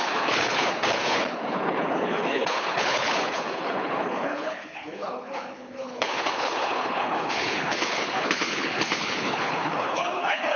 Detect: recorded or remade remade